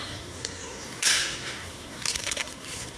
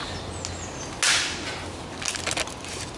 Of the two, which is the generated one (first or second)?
first